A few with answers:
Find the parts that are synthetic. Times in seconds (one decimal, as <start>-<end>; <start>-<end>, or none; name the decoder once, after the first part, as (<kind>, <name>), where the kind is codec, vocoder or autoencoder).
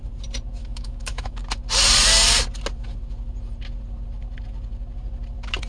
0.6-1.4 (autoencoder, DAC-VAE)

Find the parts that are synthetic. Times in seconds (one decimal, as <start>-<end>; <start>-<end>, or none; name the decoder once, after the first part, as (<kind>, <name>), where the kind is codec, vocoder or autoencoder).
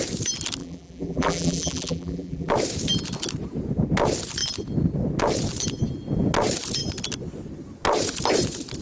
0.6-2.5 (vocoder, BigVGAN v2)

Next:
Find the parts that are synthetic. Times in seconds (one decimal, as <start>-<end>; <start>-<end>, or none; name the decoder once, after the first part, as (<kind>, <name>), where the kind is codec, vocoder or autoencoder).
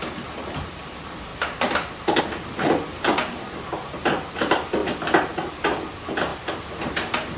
0.0-1.3 (vocoder, BigVGAN v2); 2.2-4.8; 5.5-7.4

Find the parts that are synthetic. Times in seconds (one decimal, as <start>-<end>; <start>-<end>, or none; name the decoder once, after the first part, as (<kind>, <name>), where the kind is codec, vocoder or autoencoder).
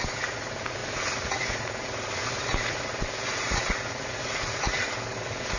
0.0-5.6 (vocoder, Vocos)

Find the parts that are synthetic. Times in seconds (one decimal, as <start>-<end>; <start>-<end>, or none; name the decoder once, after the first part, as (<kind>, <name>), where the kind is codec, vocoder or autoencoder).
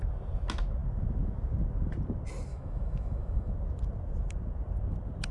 2.5-3.5 (autoencoder, DAC-VAE)